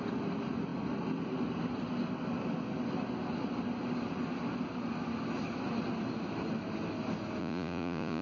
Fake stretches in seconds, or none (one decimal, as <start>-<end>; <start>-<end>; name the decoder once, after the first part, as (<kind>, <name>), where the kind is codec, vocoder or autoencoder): 7.4-8.2 (vocoder, Vocos)